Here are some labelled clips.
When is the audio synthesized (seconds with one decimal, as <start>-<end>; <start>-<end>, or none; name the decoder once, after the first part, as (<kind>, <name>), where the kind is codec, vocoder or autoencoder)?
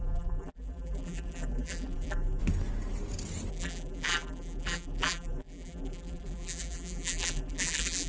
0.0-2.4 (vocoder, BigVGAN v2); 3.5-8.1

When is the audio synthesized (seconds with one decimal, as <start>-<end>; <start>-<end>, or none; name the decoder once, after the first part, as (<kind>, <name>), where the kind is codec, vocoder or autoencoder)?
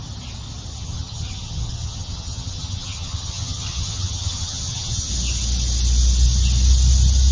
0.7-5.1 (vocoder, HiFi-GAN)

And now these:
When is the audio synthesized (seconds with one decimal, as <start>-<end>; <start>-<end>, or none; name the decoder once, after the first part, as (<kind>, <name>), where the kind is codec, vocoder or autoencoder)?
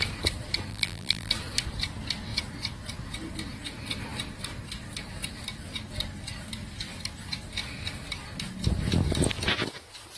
0.7-1.3 (vocoder, BigVGAN v2)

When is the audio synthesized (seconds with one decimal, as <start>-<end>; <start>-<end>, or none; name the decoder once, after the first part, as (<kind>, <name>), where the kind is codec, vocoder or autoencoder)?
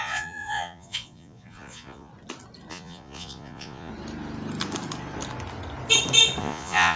0.0-2.1 (vocoder, Vocos); 2.7-3.9; 6.4-7.0